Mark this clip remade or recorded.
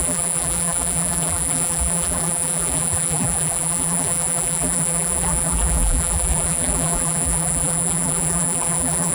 remade